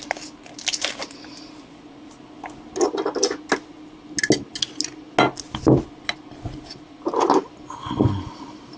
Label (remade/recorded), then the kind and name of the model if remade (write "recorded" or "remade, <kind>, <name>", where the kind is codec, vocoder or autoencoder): recorded